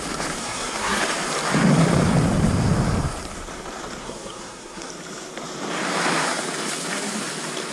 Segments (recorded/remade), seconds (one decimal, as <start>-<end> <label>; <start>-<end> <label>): 0.0-0.4 recorded; 0.4-1.0 remade; 1.0-4.0 recorded; 4.0-4.9 remade; 4.9-7.7 recorded